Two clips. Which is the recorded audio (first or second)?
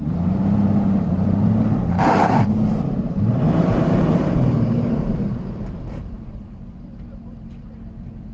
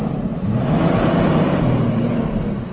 second